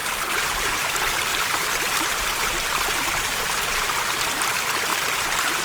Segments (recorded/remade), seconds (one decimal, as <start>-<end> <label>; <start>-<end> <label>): 0.0-0.8 remade; 0.8-1.3 recorded; 1.3-4.2 remade; 4.2-4.9 recorded; 4.9-5.6 remade